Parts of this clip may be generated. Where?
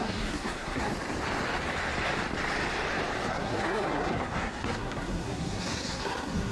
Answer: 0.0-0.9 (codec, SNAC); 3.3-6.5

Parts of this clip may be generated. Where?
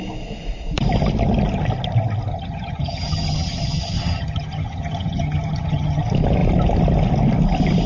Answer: 2.3-6.0 (vocoder, HiFi-GAN)